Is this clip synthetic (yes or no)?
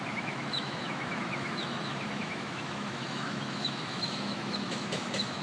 yes